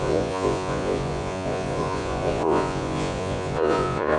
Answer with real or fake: fake